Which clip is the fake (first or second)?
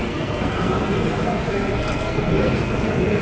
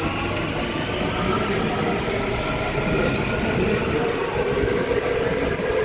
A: first